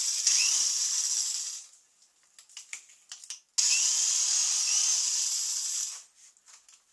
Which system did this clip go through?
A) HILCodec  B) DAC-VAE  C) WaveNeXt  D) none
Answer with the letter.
D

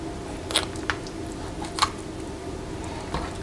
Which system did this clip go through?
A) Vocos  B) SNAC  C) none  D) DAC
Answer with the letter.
C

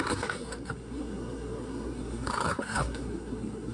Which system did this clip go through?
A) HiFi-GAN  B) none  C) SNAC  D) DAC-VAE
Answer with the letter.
C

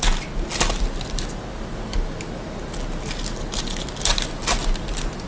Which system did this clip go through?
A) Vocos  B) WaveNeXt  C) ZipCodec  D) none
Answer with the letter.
D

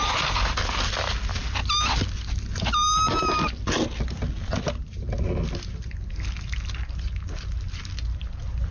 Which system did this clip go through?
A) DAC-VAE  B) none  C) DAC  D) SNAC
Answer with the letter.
B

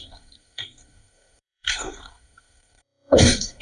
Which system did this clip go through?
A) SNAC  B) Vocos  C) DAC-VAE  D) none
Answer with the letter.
A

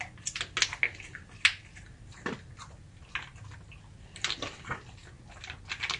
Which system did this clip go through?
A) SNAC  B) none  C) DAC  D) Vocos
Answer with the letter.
B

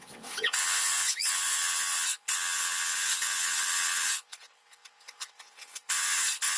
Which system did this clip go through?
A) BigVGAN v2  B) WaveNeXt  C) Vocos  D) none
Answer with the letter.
B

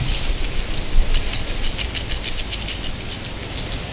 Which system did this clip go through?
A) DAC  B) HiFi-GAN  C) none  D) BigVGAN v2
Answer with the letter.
C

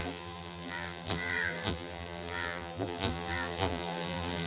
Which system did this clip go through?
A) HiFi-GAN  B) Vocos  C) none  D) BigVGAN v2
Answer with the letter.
D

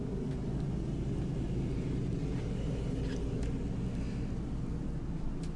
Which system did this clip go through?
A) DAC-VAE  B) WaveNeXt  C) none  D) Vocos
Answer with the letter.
C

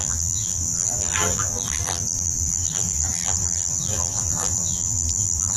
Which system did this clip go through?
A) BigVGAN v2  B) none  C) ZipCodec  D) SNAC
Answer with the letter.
A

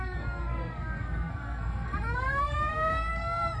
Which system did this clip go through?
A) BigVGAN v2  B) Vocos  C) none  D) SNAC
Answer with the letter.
D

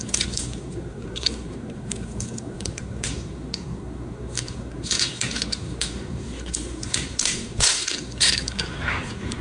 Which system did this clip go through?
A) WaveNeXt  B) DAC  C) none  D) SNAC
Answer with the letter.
D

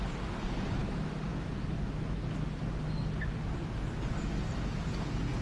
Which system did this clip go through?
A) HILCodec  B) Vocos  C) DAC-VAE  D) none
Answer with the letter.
D